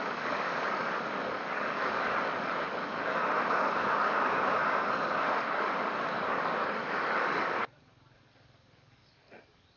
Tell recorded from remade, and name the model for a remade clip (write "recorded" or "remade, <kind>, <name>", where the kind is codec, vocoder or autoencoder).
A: remade, codec, DAC